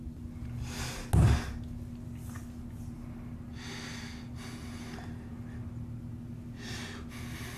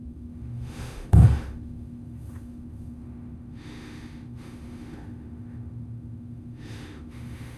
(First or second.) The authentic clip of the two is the first